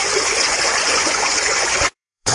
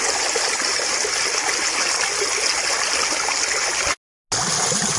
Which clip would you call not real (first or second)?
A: first